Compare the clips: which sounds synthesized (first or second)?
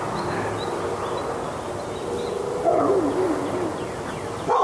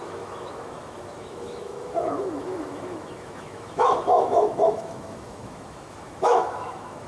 second